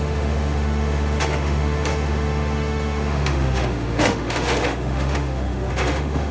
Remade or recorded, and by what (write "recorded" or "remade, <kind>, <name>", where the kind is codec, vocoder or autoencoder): remade, autoencoder, DAC-VAE